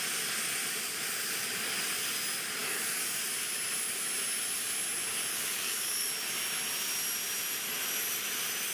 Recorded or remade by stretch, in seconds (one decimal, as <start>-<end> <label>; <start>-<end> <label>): 0.0-2.6 recorded; 2.6-3.2 remade; 3.2-5.3 recorded; 5.3-6.1 remade; 6.1-8.7 recorded